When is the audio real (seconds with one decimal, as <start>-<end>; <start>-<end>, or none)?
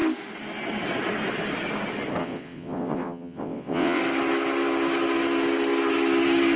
0.0-2.2; 4.0-6.6